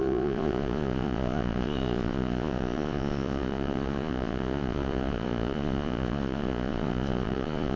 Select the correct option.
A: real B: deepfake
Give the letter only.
B